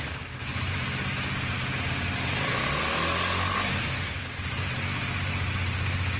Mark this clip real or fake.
real